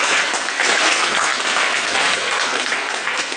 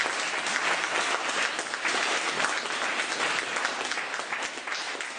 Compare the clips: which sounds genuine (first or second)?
second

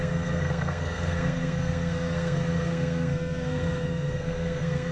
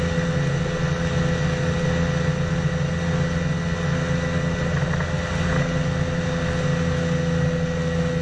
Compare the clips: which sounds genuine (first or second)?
second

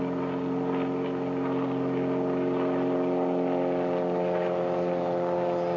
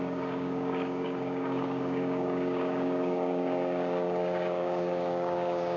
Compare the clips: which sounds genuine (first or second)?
first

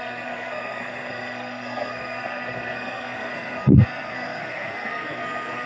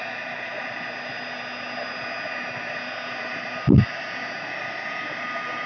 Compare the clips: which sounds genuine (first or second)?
second